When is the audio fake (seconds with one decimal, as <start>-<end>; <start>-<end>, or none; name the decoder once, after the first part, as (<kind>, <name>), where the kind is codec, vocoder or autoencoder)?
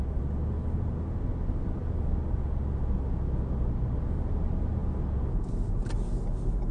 none